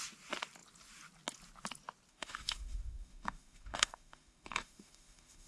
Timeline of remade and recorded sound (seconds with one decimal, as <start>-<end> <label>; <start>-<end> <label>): 0.0-2.1 recorded; 2.1-5.5 remade